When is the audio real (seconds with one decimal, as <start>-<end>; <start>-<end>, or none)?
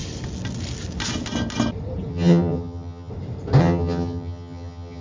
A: 0.0-2.1; 3.1-3.6